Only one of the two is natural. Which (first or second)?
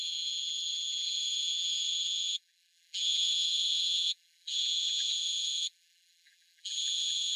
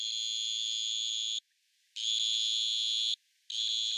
second